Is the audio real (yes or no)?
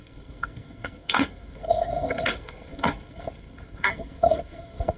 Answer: no